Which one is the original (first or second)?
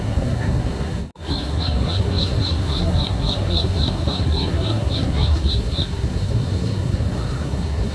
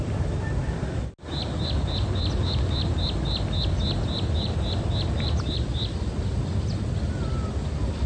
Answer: second